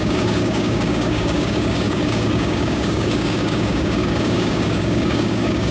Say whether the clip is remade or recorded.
remade